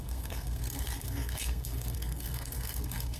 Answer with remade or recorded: remade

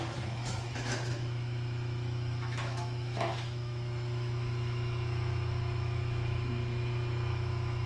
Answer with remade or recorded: remade